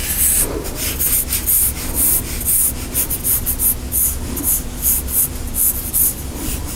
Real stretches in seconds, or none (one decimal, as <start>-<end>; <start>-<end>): 1.0-6.8